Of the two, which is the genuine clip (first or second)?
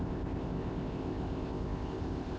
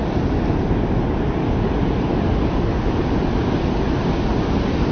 second